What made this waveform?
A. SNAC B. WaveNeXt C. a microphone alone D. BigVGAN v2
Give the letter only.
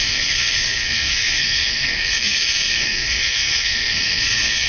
A